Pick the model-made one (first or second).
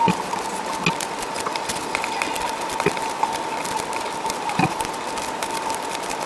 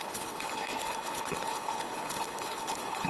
second